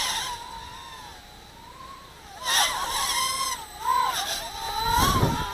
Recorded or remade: recorded